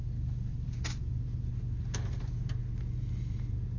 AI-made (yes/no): no